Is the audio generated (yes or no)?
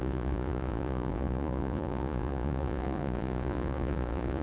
yes